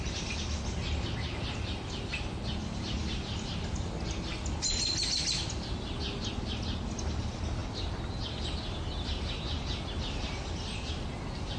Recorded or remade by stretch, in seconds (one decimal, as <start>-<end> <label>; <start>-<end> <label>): 0.0-11.6 recorded